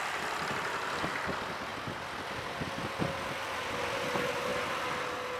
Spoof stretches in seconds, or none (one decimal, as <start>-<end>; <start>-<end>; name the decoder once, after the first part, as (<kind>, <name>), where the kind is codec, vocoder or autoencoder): none